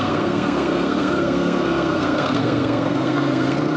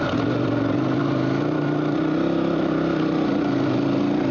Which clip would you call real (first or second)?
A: second